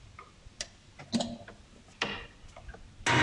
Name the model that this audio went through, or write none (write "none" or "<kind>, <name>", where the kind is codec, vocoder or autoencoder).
none